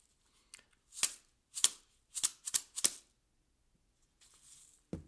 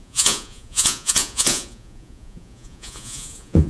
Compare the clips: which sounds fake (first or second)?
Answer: second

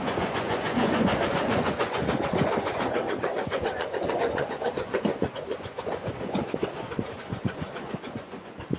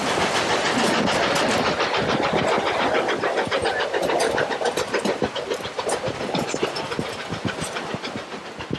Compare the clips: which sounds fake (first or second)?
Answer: first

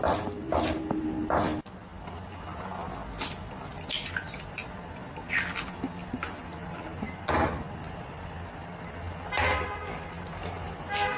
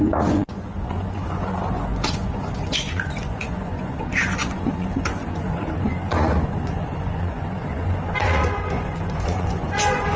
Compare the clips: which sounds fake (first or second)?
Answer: second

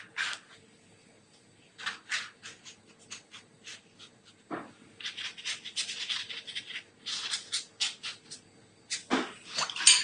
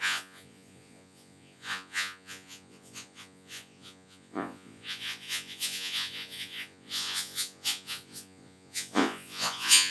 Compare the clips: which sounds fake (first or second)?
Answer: second